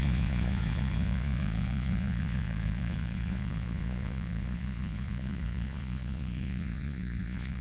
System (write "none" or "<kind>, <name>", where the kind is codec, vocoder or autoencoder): vocoder, Vocos